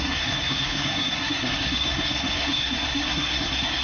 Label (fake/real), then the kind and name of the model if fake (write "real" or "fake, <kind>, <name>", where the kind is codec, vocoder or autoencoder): fake, codec, SNAC